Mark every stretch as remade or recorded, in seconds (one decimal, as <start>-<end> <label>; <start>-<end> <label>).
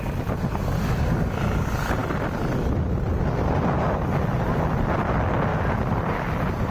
0.0-6.7 recorded